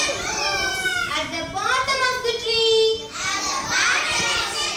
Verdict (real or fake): real